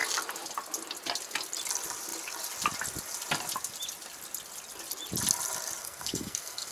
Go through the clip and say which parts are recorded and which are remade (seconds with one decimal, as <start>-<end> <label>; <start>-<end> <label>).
0.0-5.8 recorded; 5.8-6.7 remade